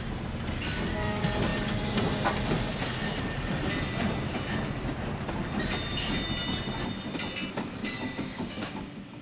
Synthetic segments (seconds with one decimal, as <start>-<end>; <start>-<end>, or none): 7.8-9.2